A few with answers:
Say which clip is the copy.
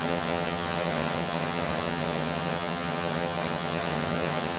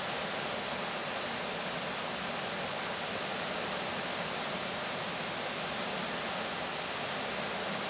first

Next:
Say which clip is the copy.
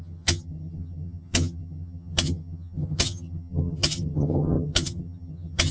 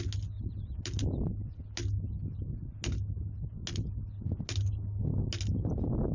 first